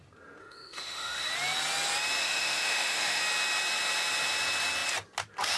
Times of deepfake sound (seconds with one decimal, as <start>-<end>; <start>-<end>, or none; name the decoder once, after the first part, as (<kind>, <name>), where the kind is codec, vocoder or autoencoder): 0.4-1.3 (autoencoder, DAC-VAE); 2.2-3.2